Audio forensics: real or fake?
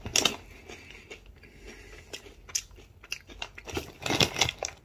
real